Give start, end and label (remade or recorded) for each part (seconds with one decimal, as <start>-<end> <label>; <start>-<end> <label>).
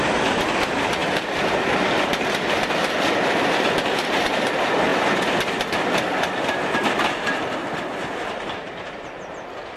0.0-9.8 recorded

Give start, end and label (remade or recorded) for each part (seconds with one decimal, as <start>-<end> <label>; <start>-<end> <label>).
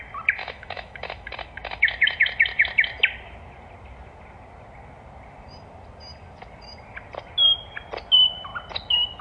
0.0-0.4 recorded; 0.4-1.3 remade; 1.3-9.2 recorded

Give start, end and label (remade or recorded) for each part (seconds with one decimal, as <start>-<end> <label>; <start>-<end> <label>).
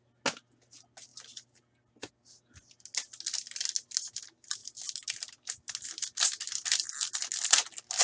0.0-8.0 recorded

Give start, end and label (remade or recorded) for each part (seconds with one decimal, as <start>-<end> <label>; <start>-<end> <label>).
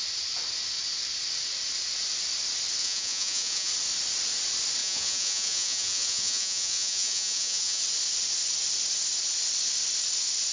0.0-2.8 recorded; 2.8-3.7 remade; 3.7-4.8 recorded; 4.8-7.8 remade; 7.8-10.5 recorded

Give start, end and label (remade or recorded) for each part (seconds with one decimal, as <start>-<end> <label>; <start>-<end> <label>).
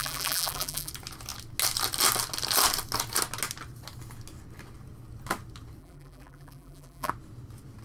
0.0-0.9 remade; 0.9-5.8 recorded; 5.8-7.1 remade; 7.1-7.8 recorded